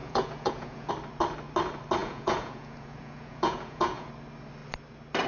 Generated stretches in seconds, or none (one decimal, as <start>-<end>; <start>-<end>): 0.0-0.9; 2.0-4.1